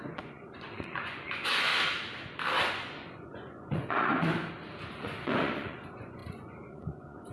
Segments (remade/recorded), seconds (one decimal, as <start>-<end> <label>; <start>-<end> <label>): 0.0-1.7 remade; 1.7-2.7 recorded; 2.7-4.3 remade; 4.3-4.9 recorded; 4.9-7.3 remade